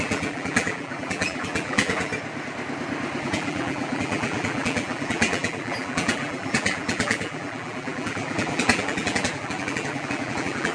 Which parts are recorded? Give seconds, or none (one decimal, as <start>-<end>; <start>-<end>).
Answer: 2.1-3.2